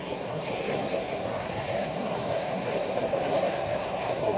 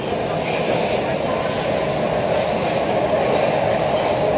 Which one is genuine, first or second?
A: second